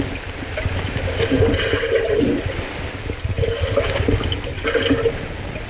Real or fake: real